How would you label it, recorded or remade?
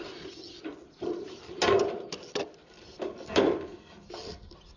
recorded